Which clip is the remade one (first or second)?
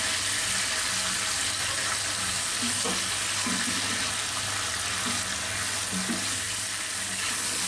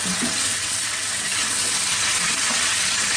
second